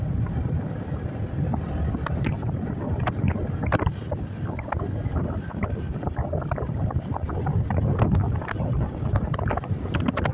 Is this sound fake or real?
real